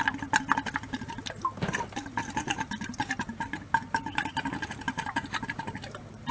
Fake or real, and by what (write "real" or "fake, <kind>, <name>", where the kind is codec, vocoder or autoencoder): real